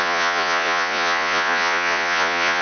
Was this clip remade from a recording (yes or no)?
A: yes